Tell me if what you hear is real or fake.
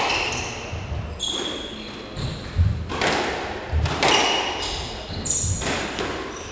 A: real